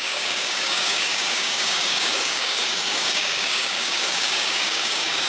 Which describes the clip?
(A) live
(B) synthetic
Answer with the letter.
B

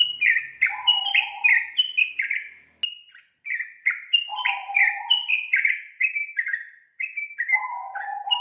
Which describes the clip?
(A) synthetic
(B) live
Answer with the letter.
B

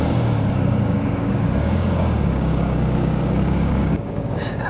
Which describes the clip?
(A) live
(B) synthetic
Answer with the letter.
B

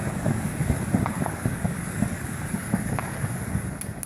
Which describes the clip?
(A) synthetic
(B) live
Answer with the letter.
A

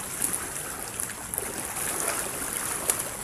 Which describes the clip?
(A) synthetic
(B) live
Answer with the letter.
B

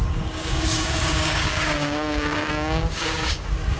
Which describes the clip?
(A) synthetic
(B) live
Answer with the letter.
A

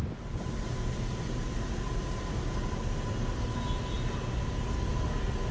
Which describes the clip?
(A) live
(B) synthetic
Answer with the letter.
A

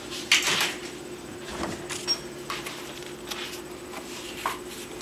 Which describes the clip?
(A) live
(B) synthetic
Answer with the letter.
A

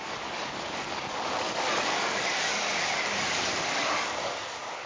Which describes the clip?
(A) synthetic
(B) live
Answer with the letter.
A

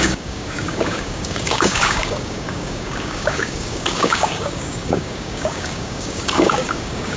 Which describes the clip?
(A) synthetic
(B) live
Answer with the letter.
A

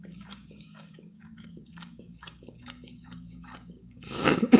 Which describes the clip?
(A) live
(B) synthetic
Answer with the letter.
B